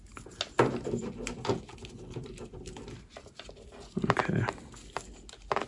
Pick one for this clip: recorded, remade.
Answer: recorded